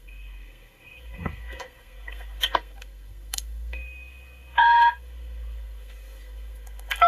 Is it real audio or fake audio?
fake